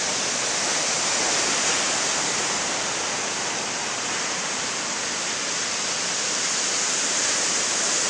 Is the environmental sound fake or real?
real